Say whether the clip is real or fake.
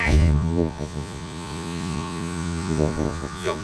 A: fake